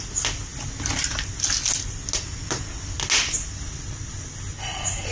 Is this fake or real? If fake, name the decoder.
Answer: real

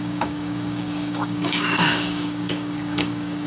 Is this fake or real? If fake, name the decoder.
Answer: fake, codec, DAC